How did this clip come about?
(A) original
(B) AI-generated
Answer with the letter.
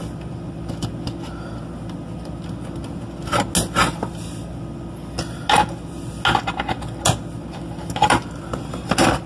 A